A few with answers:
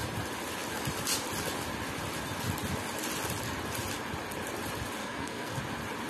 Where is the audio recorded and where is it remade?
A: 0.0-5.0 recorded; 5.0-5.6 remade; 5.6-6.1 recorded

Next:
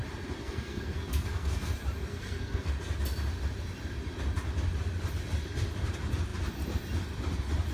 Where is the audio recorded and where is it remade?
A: 0.0-0.4 recorded; 0.4-1.7 remade; 1.7-2.1 recorded; 2.1-2.7 remade; 2.7-7.7 recorded

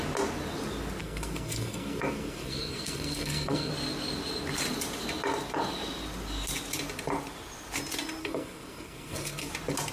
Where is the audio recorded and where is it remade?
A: 0.0-1.0 recorded; 1.0-3.7 remade; 3.7-8.2 recorded; 8.2-9.5 remade; 9.5-9.9 recorded

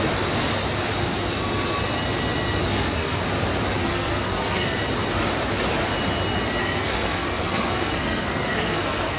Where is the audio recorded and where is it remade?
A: 0.0-2.6 recorded; 2.6-3.2 remade; 3.2-3.8 recorded; 3.8-4.8 remade; 4.8-6.6 recorded; 6.6-9.2 remade

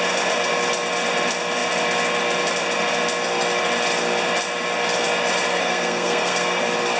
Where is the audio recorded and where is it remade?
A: 0.0-5.5 recorded; 5.5-6.6 remade; 6.6-7.0 recorded

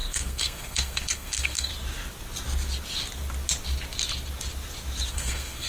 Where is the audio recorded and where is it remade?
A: 0.0-1.7 remade; 1.7-5.1 recorded; 5.1-5.7 remade

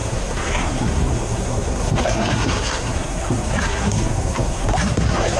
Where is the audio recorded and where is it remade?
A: 0.0-5.4 remade

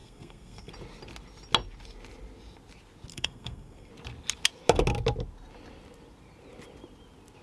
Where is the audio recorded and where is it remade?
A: 0.0-0.7 remade; 0.7-3.1 recorded; 3.1-3.9 remade; 3.9-7.4 recorded